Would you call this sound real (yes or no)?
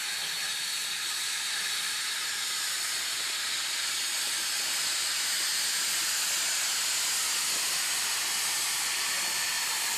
yes